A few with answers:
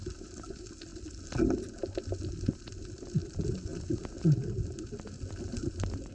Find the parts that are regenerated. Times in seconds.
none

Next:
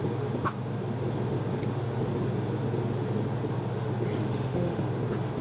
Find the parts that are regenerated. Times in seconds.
4.2-4.8 (autoencoder, DAC-VAE)

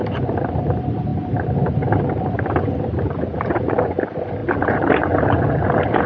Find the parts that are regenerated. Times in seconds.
none

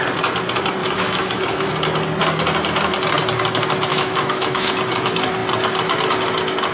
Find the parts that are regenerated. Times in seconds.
0.8-1.7 (autoencoder, DAC-VAE); 3.9-4.7

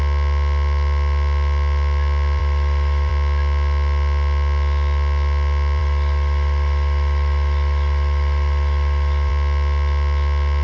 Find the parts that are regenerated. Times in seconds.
2.4-3.1 (autoencoder, DAC-VAE); 5.8-9.3

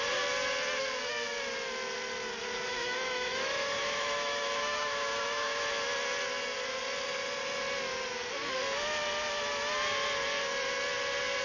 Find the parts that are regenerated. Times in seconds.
2.7-5.6 (autoencoder, DAC-VAE)

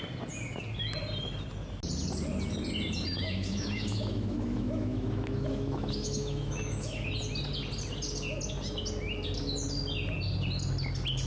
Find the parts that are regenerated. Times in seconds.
3.2-7.1 (autoencoder, DAC-VAE)

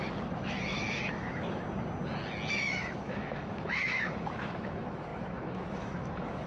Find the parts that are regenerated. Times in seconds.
0.0-1.6 (autoencoder, DAC-VAE); 2.5-6.5